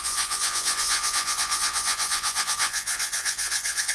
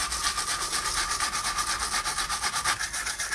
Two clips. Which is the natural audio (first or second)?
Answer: second